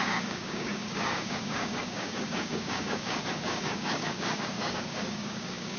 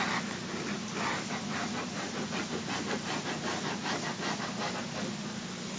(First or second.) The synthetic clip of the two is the first